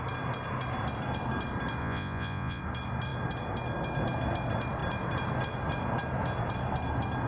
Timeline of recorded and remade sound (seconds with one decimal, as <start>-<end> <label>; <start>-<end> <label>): 0.0-1.8 recorded; 1.8-2.6 remade; 2.6-7.3 recorded